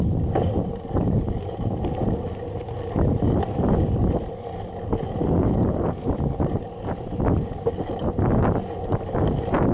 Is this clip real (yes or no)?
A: yes